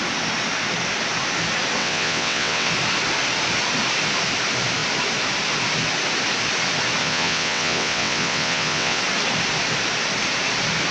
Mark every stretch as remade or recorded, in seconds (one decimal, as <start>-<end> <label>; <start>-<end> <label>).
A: 0.0-1.8 recorded; 1.8-2.7 remade; 2.7-7.0 recorded; 7.0-9.0 remade; 9.0-10.9 recorded